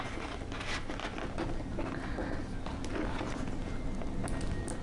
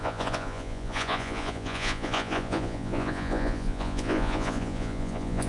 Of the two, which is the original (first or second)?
first